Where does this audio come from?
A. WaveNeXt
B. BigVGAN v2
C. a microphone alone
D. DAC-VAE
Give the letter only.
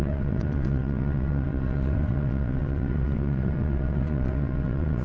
A